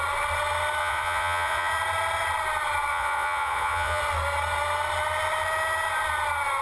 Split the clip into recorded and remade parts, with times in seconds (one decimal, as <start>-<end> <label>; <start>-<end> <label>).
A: 0.0-0.8 recorded; 0.8-1.7 remade; 1.7-2.9 recorded; 2.9-4.0 remade; 4.0-6.6 recorded